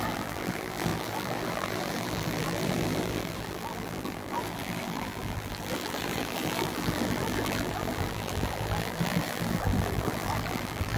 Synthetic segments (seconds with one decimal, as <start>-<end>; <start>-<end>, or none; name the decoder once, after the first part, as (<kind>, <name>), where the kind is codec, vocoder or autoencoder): 0.0-11.0 (vocoder, BigVGAN v2)